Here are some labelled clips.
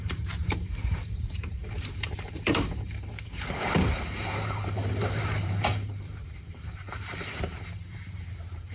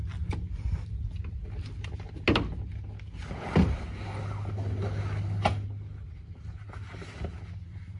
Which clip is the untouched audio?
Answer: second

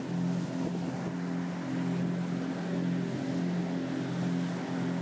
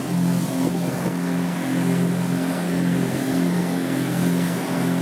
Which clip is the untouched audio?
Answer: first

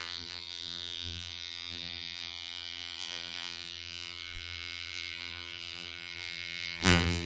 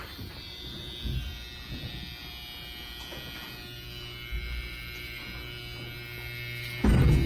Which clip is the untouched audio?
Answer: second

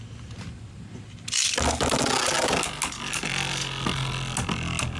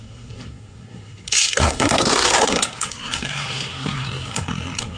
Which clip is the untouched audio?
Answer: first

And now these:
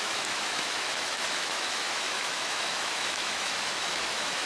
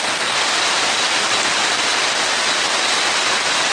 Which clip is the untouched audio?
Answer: second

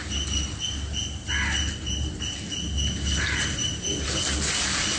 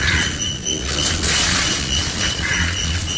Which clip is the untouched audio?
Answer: first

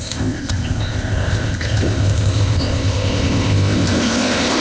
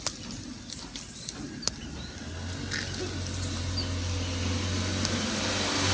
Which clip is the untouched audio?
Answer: second